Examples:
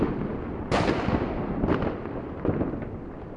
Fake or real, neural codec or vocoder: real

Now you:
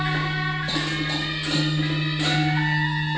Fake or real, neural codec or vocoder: real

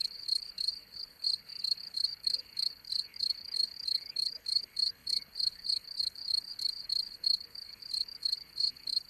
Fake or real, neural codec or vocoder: fake, codec, HILCodec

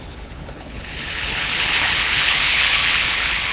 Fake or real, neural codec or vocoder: fake, codec, HILCodec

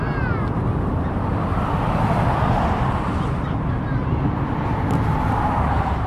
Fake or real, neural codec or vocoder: real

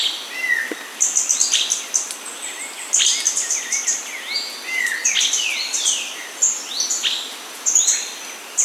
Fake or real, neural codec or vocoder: real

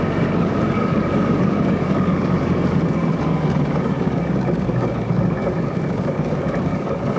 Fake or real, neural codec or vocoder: fake, codec, DAC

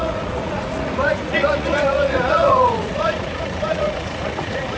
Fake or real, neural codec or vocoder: fake, vocoder, Vocos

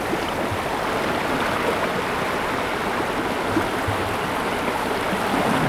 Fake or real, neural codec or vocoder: real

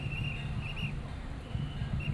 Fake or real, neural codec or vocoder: real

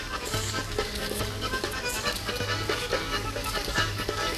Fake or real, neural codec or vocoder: fake, codec, DAC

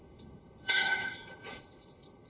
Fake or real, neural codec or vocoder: fake, codec, HILCodec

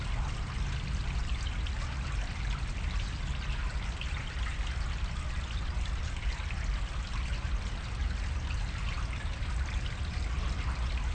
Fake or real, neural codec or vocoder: real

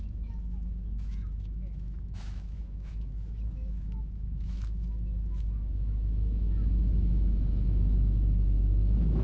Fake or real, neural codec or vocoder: fake, autoencoder, DAC-VAE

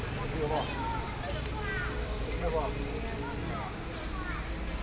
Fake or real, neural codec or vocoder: real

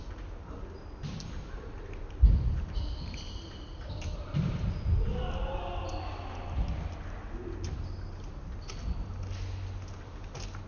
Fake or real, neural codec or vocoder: real